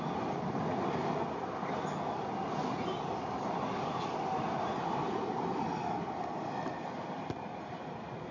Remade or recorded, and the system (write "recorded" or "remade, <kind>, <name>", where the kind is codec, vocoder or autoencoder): recorded